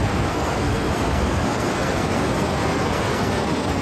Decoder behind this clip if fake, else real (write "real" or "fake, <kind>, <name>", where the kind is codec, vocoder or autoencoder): fake, codec, SNAC